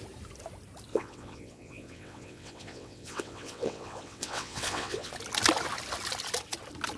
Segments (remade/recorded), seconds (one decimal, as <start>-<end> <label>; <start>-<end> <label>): 0.0-0.9 recorded; 0.9-5.1 remade; 5.1-7.0 recorded